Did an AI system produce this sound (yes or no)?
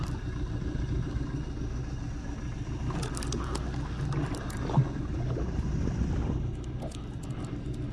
no